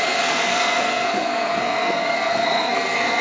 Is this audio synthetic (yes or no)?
yes